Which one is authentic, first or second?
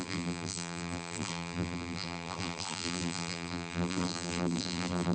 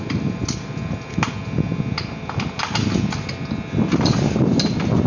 second